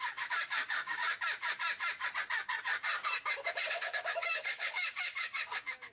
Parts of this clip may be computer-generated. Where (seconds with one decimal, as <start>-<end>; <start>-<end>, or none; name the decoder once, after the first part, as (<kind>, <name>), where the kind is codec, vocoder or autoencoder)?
0.0-1.0 (codec, DAC); 3.7-5.9